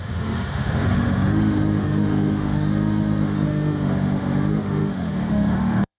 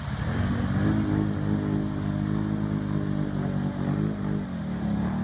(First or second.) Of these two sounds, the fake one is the first